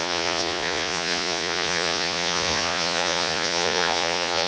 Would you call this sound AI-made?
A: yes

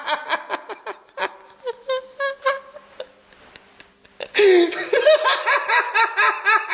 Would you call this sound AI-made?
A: no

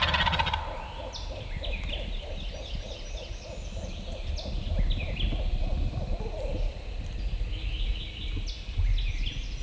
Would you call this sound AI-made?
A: no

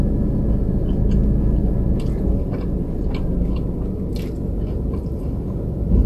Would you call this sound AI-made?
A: no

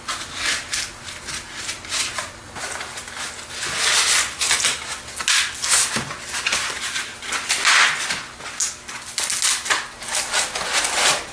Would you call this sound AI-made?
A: no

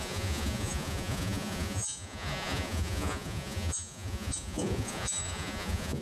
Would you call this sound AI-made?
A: yes